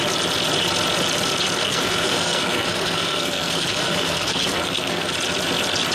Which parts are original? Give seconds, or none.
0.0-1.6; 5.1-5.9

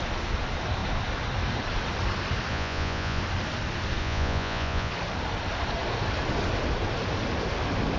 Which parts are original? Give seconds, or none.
0.0-2.5; 3.2-4.0; 4.9-8.0

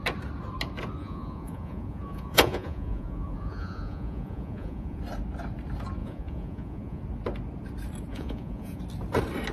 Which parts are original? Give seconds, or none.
0.0-1.0; 5.0-6.0; 7.0-8.1; 8.8-9.5

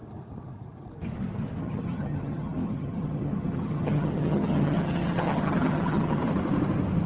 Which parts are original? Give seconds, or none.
0.0-1.6; 6.2-7.1

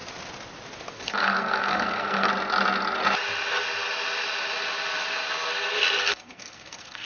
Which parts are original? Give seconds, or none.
0.0-0.9; 2.3-6.0